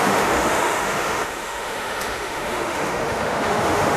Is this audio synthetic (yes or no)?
yes